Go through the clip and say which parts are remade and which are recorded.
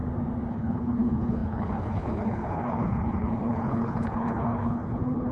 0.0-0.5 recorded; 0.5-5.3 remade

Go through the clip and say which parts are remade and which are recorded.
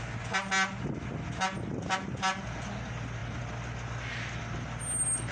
0.0-5.3 recorded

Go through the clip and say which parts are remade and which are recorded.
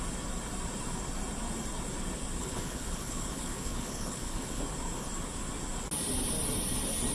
0.0-2.4 recorded; 2.4-4.6 remade; 4.6-7.1 recorded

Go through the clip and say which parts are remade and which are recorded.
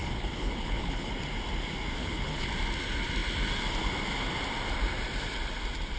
0.0-1.1 remade; 1.1-2.0 recorded; 2.0-2.5 remade; 2.5-6.0 recorded